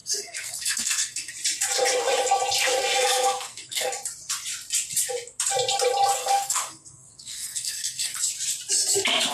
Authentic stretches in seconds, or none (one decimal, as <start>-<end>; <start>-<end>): 1.3-2.8; 3.9-6.2; 8.2-9.3